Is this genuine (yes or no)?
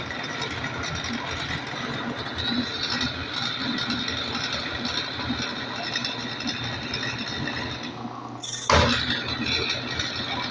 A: yes